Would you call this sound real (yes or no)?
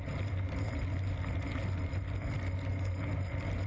yes